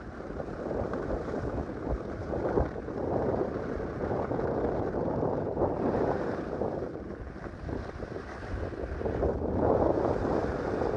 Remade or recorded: recorded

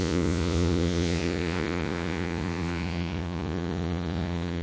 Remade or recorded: remade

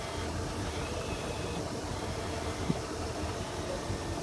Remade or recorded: recorded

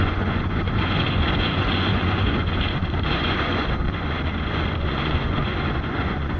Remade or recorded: remade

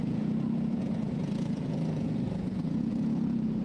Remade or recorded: remade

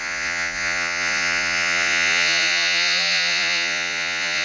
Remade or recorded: remade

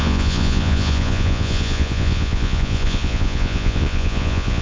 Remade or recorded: remade